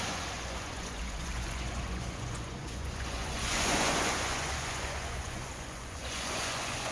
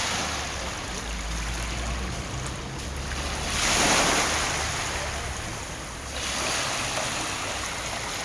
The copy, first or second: first